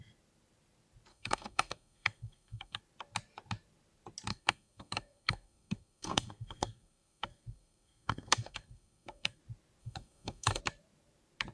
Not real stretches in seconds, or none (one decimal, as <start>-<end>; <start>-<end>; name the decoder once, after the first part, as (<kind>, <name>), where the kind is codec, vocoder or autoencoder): 1.1-2.8 (codec, SNAC); 4.3-9.4; 9.8-10.6